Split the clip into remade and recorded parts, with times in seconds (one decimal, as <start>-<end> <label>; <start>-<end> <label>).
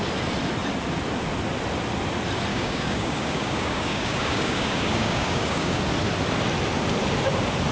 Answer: 0.0-2.5 recorded; 2.5-5.8 remade; 5.8-7.7 recorded